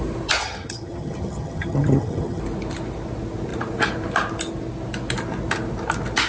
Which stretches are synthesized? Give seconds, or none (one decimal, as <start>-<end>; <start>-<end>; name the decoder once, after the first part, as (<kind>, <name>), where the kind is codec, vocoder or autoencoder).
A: 0.4-2.4 (vocoder, HiFi-GAN)